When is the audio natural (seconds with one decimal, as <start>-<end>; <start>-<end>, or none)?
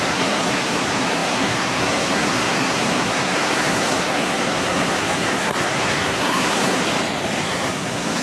6.8-7.4